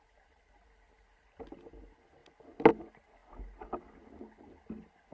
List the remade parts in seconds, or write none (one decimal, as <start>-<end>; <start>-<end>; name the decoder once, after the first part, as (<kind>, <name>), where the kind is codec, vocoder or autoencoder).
none